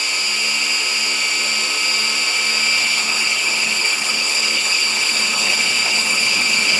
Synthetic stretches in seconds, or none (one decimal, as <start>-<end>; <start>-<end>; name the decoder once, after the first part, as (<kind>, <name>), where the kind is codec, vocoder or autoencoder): 2.8-6.8 (codec, HILCodec)